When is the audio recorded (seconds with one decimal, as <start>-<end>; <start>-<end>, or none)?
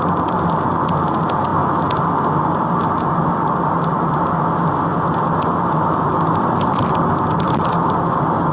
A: 0.0-8.5